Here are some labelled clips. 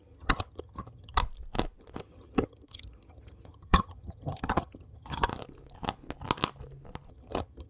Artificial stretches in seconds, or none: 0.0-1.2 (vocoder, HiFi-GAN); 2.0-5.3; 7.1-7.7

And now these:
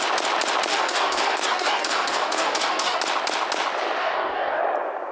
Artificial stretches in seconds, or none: 0.7-3.0 (codec, DAC); 4.0-4.6

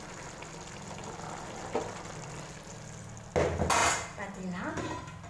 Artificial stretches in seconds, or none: none

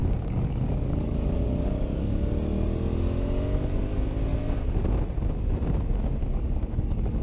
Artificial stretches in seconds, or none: 0.0-2.1 (codec, DAC); 6.2-7.2

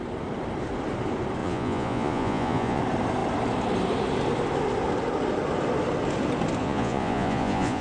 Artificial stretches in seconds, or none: 1.4-2.8 (vocoder, Vocos); 6.6-7.8

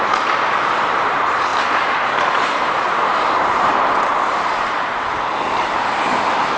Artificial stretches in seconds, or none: 0.0-1.5 (vocoder, BigVGAN v2); 2.4-4.1

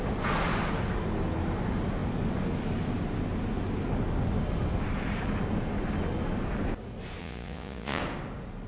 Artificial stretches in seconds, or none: 7.2-8.0 (vocoder, Vocos)

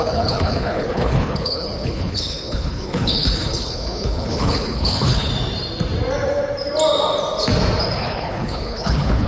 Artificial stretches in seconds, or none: 0.0-5.3 (codec, HILCodec); 8.0-9.3